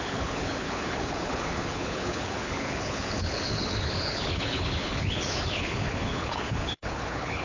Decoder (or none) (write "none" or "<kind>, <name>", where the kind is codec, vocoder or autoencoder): codec, HILCodec